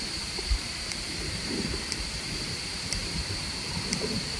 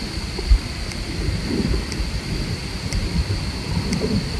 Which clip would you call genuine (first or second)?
second